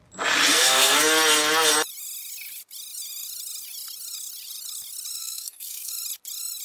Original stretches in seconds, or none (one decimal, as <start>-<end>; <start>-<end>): 0.0-0.5; 1.0-5.2; 5.9-6.6